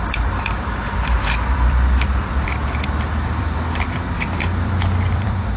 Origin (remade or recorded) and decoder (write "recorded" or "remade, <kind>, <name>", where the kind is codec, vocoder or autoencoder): remade, vocoder, BigVGAN v2